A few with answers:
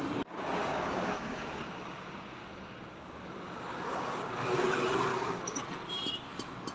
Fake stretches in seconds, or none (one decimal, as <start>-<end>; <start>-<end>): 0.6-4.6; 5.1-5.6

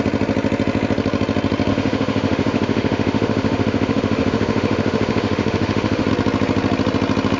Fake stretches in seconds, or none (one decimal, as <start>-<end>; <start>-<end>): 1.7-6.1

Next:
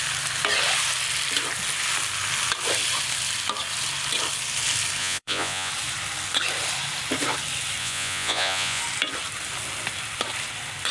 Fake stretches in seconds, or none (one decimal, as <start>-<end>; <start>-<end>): 5.0-5.7; 7.8-8.8

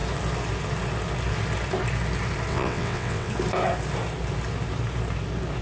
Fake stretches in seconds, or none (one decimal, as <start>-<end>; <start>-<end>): 2.5-3.3

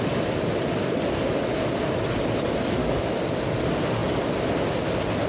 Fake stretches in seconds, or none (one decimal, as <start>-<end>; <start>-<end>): 2.8-3.4